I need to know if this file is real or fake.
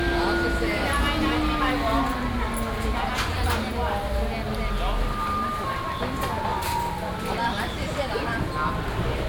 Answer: real